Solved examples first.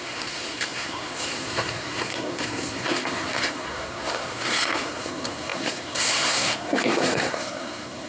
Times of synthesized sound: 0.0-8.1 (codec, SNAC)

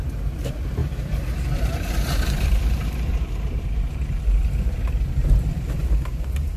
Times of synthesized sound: 0.8-4.8 (vocoder, BigVGAN v2); 5.2-6.6

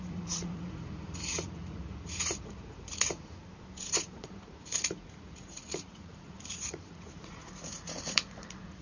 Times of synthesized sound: 0.0-3.4 (vocoder, Vocos); 3.9-8.8

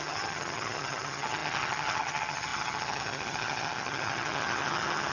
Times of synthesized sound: 0.0-5.1 (vocoder, HiFi-GAN)

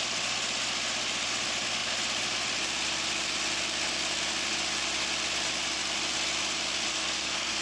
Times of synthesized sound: 6.9-7.6 (codec, SNAC)

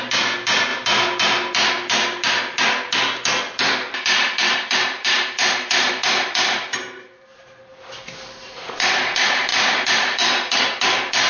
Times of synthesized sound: 4.4-7.7 (vocoder, BigVGAN v2); 9.5-10.6

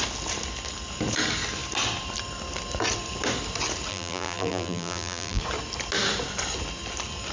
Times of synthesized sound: 3.9-5.4 (vocoder, BigVGAN v2)